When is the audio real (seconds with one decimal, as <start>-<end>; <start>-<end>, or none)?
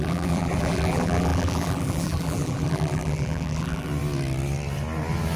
3.9-5.4